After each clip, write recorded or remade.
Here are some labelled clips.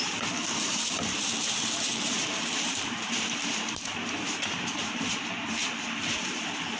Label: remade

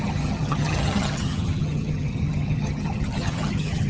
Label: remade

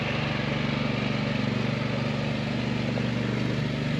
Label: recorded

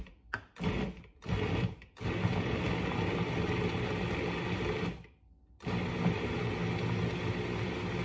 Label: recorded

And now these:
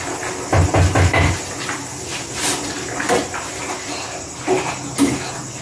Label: recorded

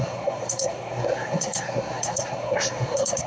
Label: remade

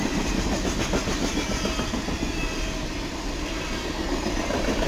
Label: recorded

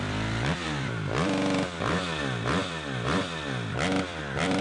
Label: remade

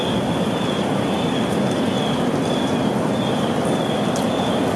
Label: recorded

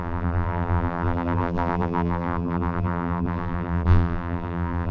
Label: remade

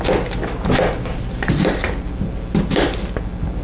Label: recorded